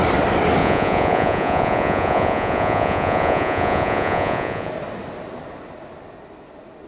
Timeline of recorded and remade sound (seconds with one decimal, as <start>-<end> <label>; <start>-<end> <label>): 0.0-0.6 recorded; 0.6-4.7 remade; 4.7-6.9 recorded